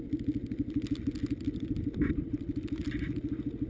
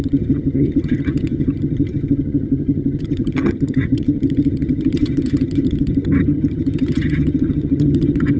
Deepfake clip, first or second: second